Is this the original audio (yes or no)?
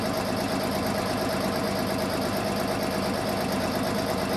yes